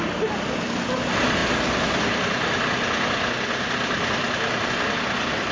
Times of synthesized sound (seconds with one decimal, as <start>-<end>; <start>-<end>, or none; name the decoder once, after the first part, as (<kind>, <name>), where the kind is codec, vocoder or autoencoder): none

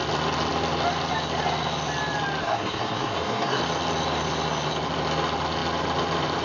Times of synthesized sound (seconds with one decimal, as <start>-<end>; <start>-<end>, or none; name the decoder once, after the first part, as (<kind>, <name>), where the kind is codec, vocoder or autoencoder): 2.4-3.6 (codec, SNAC)

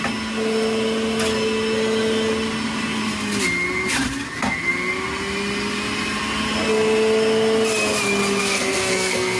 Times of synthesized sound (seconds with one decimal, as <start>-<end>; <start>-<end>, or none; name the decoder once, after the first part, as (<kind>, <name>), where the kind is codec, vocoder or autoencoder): 8.4-9.4 (codec, SNAC)

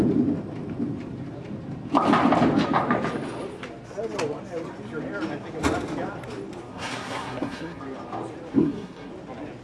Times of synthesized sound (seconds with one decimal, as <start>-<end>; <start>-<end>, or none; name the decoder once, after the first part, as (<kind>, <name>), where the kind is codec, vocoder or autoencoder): 6.7-7.8 (codec, SNAC); 8.5-9.1

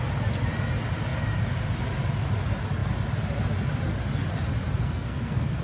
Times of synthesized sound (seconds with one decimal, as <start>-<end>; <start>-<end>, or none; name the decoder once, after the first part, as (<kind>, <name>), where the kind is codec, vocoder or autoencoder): 4.8-5.6 (codec, SNAC)

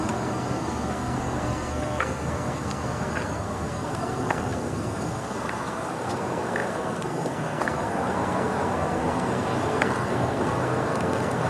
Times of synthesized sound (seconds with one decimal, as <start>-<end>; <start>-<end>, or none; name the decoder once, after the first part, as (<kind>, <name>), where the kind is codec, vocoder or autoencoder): 0.0-11.5 (codec, SNAC)

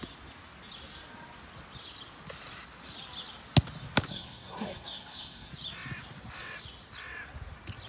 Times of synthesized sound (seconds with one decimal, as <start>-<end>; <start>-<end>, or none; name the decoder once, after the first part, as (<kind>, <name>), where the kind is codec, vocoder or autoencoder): 4.1-5.5 (codec, SNAC)